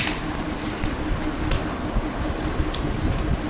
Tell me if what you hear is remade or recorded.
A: recorded